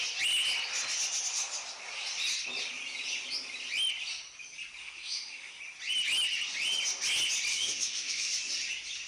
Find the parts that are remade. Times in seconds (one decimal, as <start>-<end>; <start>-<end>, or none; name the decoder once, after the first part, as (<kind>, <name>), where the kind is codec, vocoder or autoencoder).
4.8-5.6 (autoencoder, DAC-VAE); 7.5-8.3